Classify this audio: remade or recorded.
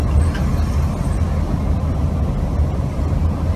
recorded